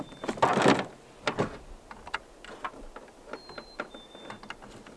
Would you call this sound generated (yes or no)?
no